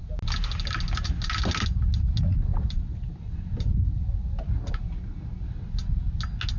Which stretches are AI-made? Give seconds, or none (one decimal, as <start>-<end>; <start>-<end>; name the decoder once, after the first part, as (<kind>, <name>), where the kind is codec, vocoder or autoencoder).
2.5-4.7 (vocoder, BigVGAN v2)